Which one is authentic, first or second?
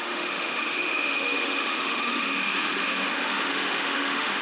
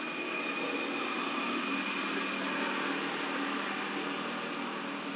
second